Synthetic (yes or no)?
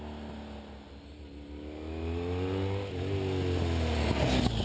no